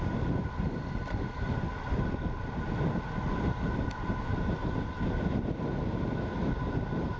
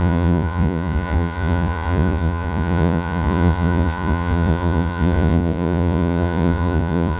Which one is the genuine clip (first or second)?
first